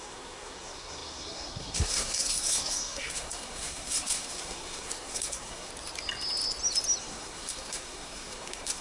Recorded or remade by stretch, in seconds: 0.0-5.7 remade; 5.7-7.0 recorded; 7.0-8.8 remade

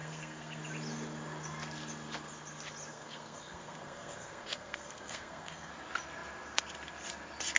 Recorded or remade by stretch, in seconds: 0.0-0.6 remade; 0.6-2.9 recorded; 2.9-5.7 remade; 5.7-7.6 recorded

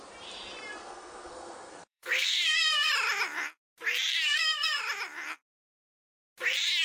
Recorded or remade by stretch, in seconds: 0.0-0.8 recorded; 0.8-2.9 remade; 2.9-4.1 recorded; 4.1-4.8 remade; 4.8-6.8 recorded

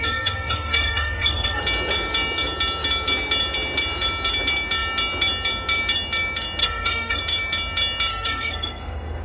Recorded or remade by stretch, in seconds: 0.0-1.6 remade; 1.6-6.6 recorded; 6.6-7.2 remade; 7.2-8.1 recorded; 8.1-9.2 remade